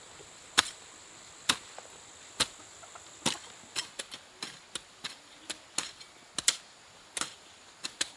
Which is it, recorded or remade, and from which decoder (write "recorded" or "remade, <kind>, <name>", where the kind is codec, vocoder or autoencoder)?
recorded